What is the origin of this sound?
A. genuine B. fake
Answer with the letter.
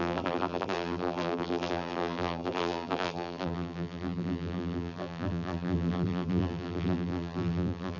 B